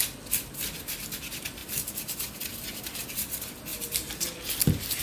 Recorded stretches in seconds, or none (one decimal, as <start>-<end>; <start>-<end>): 0.0-5.0